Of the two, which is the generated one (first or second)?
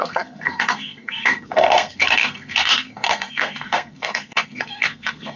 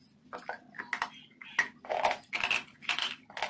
first